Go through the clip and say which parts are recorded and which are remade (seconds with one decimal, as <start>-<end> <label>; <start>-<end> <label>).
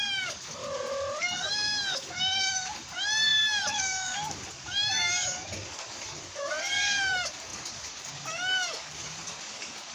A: 0.0-0.6 remade; 0.6-1.2 recorded; 1.2-9.9 remade